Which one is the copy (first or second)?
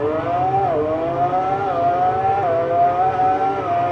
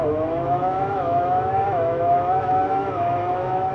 second